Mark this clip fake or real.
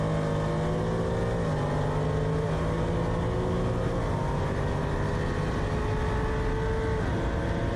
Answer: real